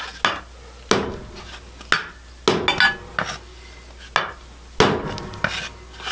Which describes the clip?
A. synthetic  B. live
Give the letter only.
B